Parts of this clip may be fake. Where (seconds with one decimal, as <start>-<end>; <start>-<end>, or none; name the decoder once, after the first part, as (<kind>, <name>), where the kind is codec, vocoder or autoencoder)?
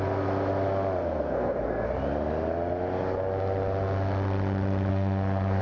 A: 1.0-1.9 (codec, SNAC); 4.9-5.6